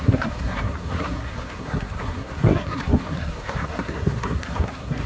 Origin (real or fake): fake